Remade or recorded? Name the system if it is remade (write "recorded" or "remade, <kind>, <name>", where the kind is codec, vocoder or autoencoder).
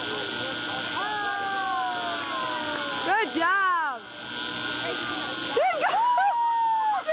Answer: recorded